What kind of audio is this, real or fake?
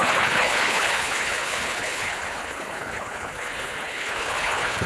fake